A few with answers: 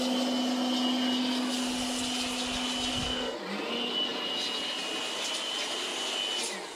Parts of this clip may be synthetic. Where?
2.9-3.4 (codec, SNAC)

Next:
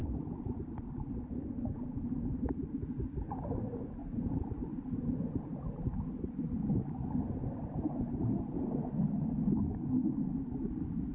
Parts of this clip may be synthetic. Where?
0.0-2.1 (vocoder, BigVGAN v2); 4.0-5.4

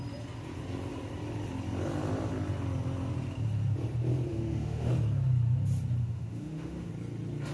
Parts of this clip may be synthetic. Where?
4.3-4.9 (autoencoder, DAC-VAE); 6.0-6.9

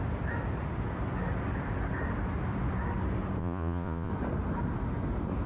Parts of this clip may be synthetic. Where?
3.4-4.1 (vocoder, Vocos)

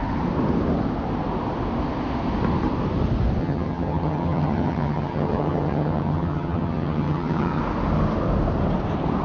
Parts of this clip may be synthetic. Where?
3.4-7.6 (vocoder, HiFi-GAN)

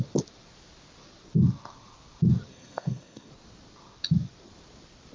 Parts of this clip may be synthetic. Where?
2.5-3.3 (codec, SNAC)